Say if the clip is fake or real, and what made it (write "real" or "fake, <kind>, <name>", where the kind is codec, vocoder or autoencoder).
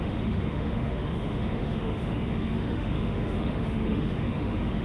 fake, autoencoder, DAC-VAE